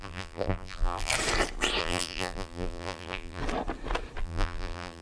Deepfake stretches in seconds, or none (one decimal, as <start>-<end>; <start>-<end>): 0.0-1.1; 1.8-3.4; 4.2-5.0